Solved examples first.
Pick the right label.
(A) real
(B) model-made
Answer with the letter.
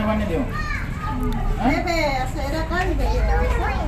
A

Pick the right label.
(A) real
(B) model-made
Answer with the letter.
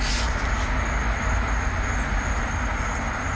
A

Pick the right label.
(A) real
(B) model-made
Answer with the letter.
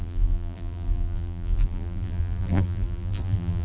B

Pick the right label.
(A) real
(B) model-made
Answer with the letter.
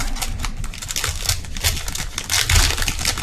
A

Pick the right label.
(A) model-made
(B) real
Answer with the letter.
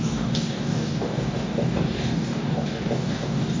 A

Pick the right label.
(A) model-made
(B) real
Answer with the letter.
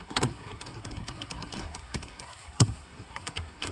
A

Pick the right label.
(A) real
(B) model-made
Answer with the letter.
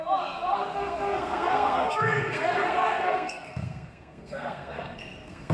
B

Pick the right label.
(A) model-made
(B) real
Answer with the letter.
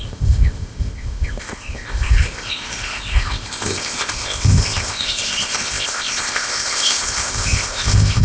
A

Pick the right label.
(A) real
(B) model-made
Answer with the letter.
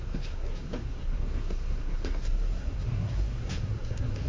B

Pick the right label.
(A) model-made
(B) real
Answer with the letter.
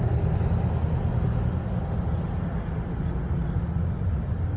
B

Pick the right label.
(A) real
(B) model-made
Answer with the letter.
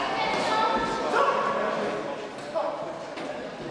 A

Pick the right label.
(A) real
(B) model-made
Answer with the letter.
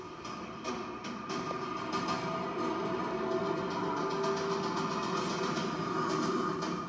A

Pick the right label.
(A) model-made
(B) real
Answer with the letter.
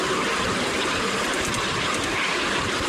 B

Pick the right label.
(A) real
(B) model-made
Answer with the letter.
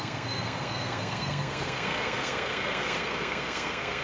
B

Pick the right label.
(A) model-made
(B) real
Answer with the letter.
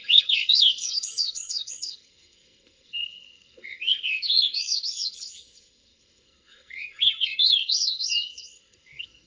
A